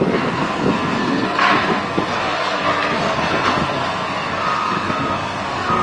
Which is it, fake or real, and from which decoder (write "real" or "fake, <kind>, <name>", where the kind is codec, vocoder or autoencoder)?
fake, codec, SNAC